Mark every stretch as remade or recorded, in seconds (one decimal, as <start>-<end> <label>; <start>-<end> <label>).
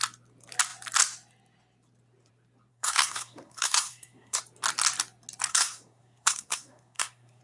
0.0-2.7 recorded; 2.7-4.4 remade; 4.4-5.5 recorded; 5.5-7.4 remade